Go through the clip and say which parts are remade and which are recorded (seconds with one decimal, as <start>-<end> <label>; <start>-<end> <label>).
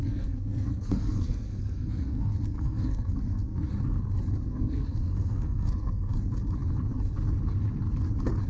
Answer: 0.0-3.6 remade; 3.6-4.5 recorded; 4.5-6.1 remade; 6.1-8.5 recorded